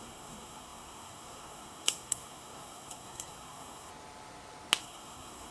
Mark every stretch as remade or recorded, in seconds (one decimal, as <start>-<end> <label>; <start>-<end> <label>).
0.0-3.9 remade; 3.9-4.8 recorded; 4.8-5.5 remade